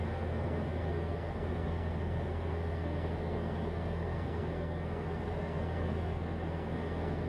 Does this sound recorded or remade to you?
remade